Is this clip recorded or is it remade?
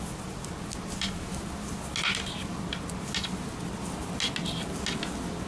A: recorded